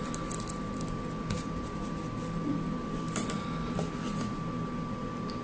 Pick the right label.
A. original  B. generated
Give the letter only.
A